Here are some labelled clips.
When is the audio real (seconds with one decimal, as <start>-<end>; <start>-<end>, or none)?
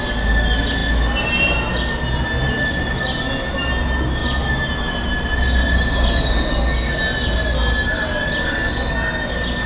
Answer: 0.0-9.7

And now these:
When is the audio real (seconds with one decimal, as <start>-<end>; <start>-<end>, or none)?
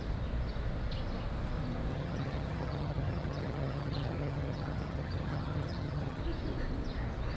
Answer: 0.0-1.9; 6.2-7.4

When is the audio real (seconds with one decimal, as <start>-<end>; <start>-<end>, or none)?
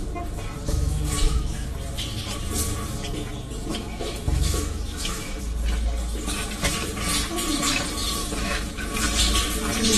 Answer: 0.0-0.7; 1.7-3.7; 5.4-8.2; 8.7-10.0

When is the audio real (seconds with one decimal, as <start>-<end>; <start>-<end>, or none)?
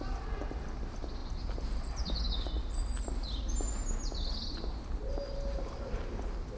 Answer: 0.0-6.6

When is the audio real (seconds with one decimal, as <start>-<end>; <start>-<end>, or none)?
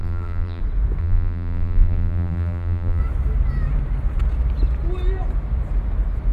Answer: 0.6-1.0; 3.0-6.3